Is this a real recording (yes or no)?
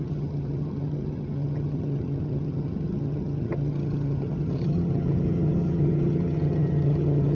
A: no